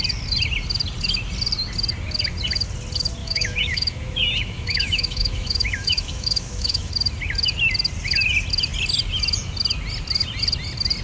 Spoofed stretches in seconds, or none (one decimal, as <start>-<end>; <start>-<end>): 3.2-6.9